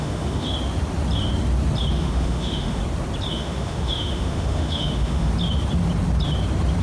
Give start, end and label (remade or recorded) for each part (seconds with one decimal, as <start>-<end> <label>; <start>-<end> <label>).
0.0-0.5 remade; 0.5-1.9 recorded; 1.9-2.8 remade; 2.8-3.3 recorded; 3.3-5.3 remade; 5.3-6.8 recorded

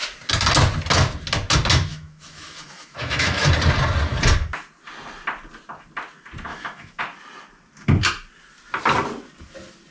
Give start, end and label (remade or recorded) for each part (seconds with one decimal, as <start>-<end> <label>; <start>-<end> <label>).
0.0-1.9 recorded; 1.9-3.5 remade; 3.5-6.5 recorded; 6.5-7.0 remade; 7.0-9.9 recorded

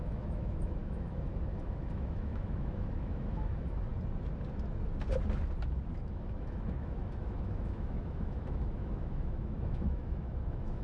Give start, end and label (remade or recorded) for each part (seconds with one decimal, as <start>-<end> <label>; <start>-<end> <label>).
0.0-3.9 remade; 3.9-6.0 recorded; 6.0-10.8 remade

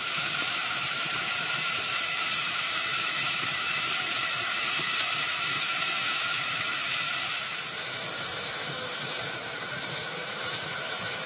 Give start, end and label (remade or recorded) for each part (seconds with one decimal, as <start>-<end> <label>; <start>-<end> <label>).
0.0-11.3 remade